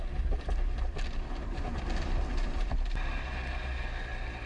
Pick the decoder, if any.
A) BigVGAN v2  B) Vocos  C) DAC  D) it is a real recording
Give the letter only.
D